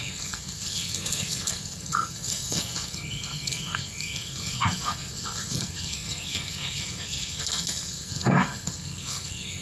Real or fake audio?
fake